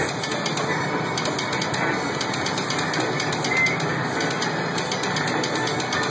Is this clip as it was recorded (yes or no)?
yes